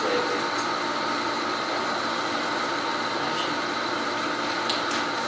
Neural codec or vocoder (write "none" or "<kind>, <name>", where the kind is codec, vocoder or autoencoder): none